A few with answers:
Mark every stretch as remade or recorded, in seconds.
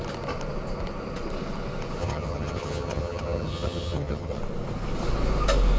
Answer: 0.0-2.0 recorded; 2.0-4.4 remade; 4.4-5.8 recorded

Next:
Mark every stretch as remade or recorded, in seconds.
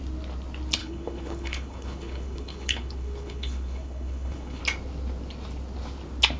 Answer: 0.0-0.8 recorded; 0.8-4.6 remade; 4.6-6.4 recorded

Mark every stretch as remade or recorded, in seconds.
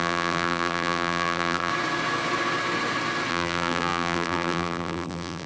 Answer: 0.0-1.7 remade; 1.7-3.3 recorded; 3.3-5.5 remade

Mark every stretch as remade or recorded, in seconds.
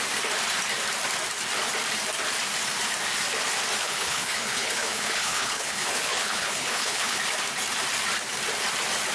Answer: 0.0-3.8 recorded; 3.8-7.2 remade; 7.2-9.1 recorded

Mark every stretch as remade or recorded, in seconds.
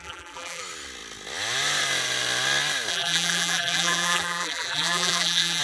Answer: 0.0-0.6 remade; 0.6-2.9 recorded; 2.9-5.6 remade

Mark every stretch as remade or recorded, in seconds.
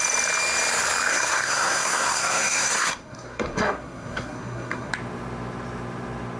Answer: 0.0-1.1 recorded; 1.1-4.9 remade; 4.9-6.4 recorded